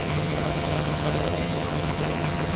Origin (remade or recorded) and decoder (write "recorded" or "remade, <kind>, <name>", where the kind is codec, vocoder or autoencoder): remade, vocoder, HiFi-GAN